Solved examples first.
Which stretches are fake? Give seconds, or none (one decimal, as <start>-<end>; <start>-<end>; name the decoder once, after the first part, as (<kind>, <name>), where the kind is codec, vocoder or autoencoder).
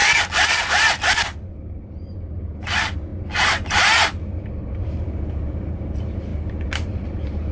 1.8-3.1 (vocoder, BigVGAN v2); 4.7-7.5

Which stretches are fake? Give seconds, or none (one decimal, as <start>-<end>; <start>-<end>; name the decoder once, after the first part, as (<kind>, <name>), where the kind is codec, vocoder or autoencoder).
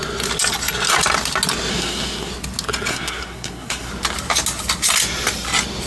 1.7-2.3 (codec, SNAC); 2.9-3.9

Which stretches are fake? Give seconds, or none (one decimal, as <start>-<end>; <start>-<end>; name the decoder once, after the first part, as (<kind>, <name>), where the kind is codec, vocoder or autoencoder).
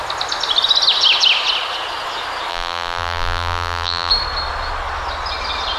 2.5-4.1 (vocoder, BigVGAN v2)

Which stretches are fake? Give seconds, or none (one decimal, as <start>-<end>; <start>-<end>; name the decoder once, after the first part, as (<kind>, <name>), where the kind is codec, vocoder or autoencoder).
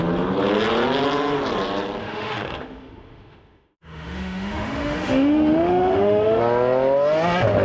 2.0-6.4 (autoencoder, DAC-VAE)